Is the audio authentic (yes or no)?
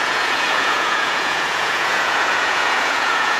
no